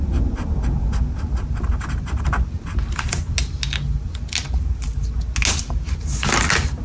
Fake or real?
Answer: real